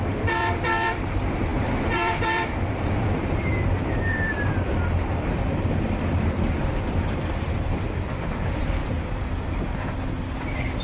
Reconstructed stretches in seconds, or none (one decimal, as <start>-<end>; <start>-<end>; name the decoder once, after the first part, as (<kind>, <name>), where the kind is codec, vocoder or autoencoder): 0.0-8.8 (vocoder, BigVGAN v2); 10.3-10.8